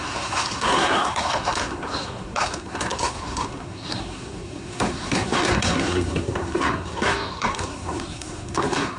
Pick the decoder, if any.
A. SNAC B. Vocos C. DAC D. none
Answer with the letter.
A